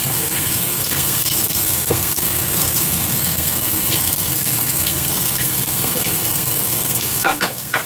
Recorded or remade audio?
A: remade